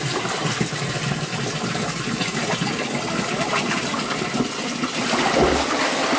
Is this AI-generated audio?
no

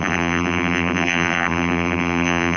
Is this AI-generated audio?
yes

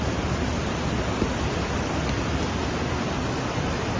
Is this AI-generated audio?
no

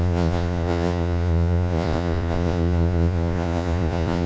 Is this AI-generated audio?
yes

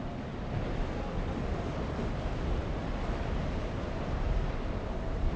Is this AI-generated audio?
no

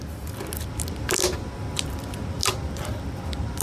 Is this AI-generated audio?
no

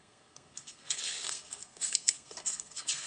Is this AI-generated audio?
yes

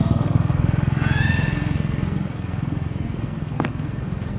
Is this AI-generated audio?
yes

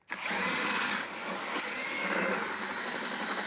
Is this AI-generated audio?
yes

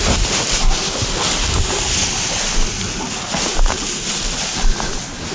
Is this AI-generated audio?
no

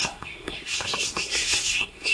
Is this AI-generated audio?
yes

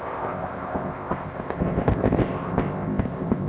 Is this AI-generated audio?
yes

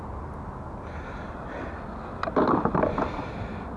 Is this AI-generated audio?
no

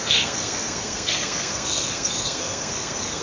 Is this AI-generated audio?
yes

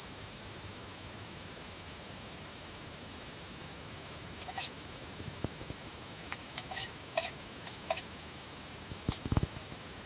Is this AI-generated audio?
yes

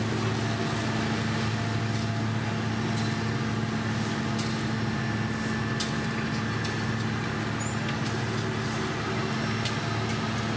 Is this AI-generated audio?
no